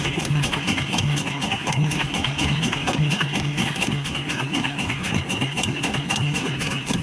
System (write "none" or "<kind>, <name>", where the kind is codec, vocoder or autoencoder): codec, SNAC